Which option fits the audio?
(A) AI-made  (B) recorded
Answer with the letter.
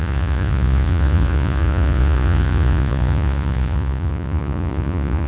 A